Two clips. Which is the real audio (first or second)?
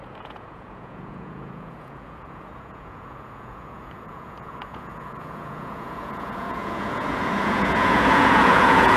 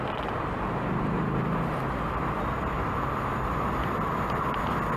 second